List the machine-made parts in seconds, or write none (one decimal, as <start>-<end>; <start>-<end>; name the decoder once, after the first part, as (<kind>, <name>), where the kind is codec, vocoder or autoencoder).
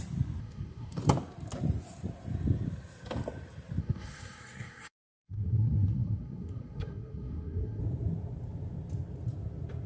0.4-1.0 (codec, SNAC); 3.8-7.8